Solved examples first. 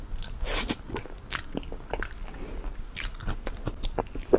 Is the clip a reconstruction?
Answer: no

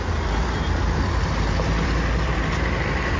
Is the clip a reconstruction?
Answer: yes